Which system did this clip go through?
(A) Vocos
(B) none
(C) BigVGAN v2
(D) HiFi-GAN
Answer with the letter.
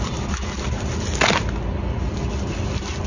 B